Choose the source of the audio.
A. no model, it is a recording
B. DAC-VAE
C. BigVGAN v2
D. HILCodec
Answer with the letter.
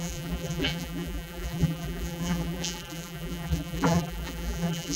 C